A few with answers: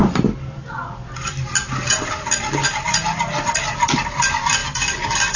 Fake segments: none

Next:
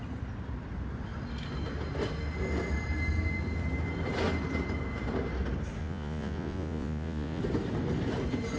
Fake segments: 5.8-7.4